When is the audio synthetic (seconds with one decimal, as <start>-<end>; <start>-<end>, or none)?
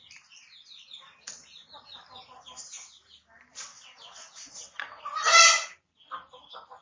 3.7-5.0